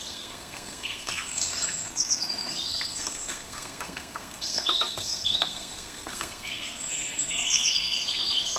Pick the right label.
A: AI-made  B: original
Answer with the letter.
A